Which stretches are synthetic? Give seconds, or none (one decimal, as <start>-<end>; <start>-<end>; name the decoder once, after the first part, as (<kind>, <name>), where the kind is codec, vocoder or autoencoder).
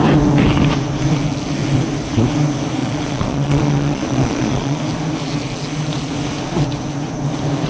2.8-4.8 (vocoder, Vocos)